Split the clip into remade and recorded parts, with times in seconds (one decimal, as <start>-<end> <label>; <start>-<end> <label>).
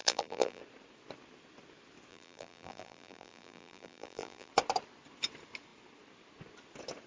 0.0-0.6 remade; 0.6-2.1 recorded; 2.1-4.5 remade; 4.5-7.1 recorded